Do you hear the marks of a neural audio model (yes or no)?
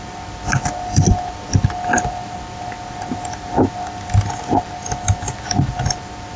no